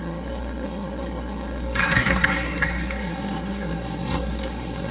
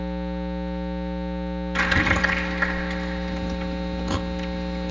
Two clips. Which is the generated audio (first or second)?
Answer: first